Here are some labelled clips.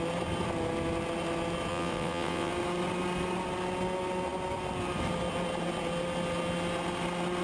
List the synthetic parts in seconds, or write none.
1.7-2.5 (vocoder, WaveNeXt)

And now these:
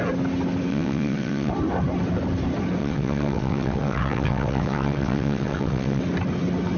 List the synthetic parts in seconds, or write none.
0.7-1.5 (vocoder, WaveNeXt); 2.8-6.0

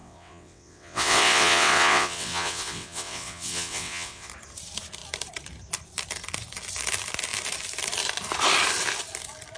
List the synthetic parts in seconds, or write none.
0.0-4.3 (vocoder, WaveNeXt)

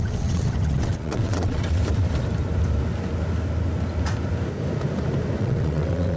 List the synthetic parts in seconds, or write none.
0.0-1.8 (vocoder, WaveNeXt); 5.4-6.2

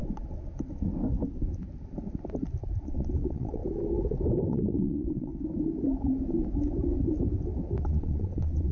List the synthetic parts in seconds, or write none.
2.8-3.6 (vocoder, WaveNeXt); 4.5-5.3; 7.8-8.7

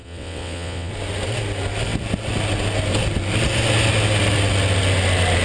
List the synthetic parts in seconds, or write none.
0.0-0.9 (vocoder, WaveNeXt)